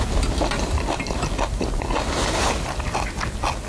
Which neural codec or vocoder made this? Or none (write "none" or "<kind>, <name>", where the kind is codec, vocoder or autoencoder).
none